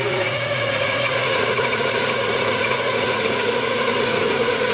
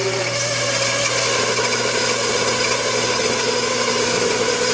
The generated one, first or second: first